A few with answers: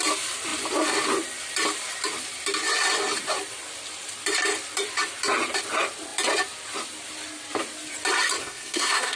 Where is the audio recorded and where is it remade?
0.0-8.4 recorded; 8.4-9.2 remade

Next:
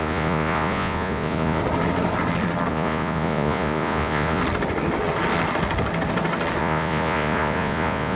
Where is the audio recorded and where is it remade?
0.0-1.6 remade; 1.6-2.7 recorded; 2.7-4.4 remade; 4.4-6.6 recorded; 6.6-8.2 remade

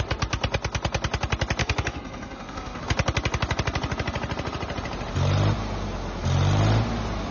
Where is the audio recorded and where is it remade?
0.0-1.6 recorded; 1.6-2.8 remade; 2.8-7.3 recorded